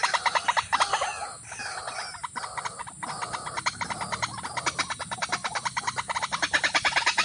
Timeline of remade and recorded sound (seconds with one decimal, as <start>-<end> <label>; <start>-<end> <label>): 0.0-7.2 recorded